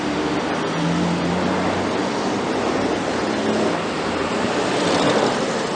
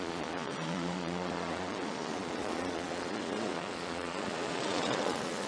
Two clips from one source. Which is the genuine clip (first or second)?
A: first